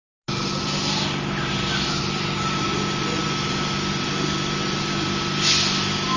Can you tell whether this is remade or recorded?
recorded